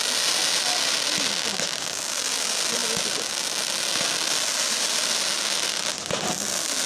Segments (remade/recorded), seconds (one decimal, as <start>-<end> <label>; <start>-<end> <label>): 0.0-6.9 recorded